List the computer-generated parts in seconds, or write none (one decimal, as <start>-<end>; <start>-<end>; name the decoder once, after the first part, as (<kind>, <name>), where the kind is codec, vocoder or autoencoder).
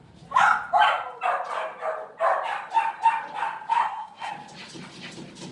3.8-4.3 (codec, SNAC)